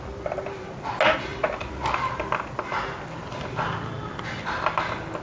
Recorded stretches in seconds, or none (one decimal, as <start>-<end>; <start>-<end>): 0.0-5.2